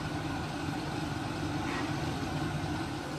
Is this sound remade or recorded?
recorded